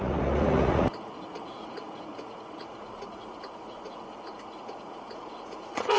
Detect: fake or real fake